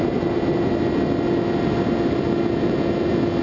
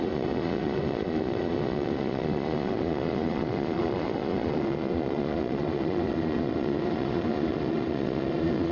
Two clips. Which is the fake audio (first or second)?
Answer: second